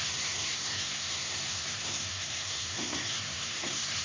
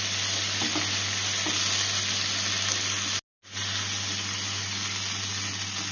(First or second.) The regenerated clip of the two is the first